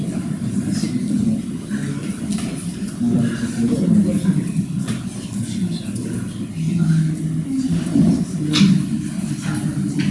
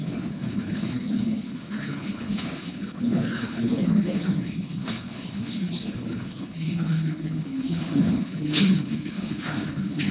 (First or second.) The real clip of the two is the first